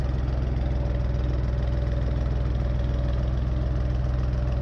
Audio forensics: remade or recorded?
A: recorded